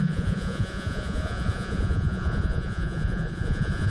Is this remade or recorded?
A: remade